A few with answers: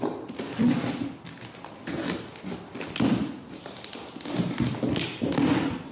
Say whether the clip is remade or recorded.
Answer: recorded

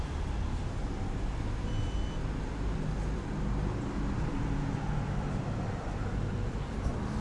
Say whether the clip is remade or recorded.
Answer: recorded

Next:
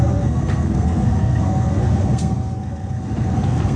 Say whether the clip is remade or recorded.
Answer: remade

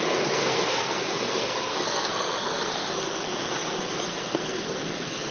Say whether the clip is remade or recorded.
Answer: remade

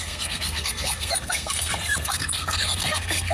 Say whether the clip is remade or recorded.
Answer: remade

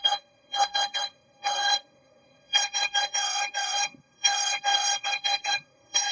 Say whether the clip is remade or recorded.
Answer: remade